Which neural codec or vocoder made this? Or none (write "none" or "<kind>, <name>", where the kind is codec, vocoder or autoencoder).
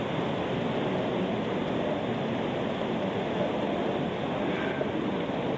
none